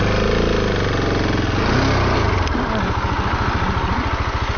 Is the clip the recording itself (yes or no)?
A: yes